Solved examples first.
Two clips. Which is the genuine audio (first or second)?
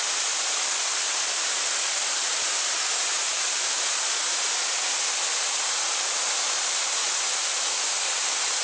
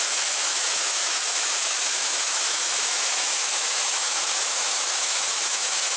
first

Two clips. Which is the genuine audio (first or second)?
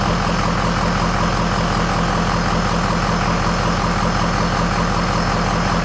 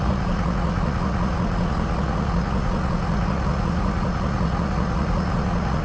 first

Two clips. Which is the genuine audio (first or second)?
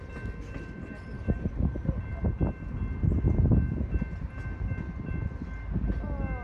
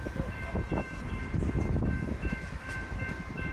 first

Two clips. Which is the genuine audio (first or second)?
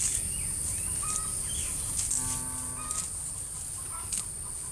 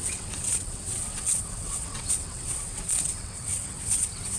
first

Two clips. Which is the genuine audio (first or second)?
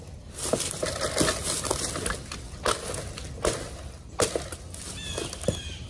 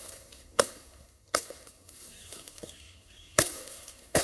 first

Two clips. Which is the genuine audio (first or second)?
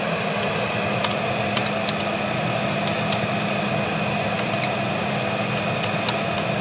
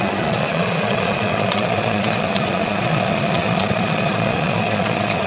first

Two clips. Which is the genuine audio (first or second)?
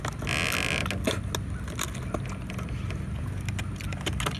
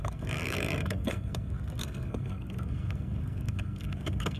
first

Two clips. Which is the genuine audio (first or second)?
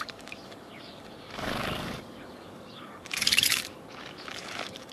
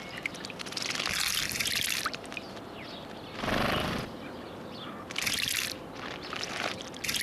second